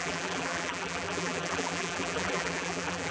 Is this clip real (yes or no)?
no